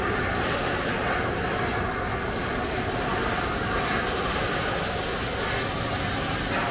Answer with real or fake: real